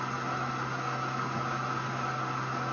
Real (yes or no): yes